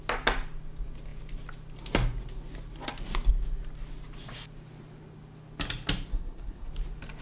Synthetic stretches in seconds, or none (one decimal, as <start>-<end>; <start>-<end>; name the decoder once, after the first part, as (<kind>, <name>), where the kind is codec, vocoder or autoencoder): 6.1-6.7 (codec, SNAC)